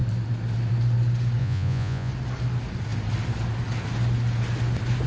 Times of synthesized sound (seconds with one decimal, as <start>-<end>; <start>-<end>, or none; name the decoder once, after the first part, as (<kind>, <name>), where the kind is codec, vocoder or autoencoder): 1.4-2.1 (vocoder, Vocos)